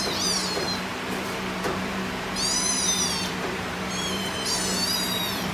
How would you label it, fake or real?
fake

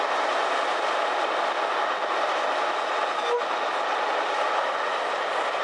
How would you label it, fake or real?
fake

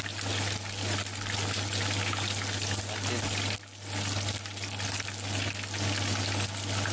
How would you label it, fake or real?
real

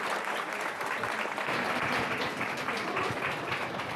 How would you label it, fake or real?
fake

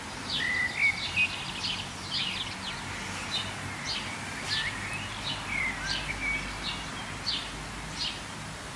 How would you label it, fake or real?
real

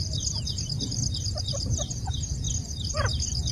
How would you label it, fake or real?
fake